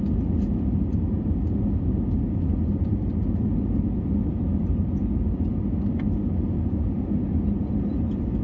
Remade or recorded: recorded